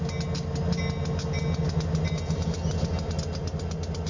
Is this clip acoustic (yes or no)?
yes